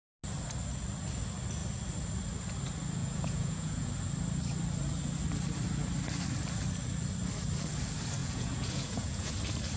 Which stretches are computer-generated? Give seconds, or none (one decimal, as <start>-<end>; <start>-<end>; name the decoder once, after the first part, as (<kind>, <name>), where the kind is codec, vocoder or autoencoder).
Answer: 3.0-3.9 (vocoder, Vocos); 8.2-9.3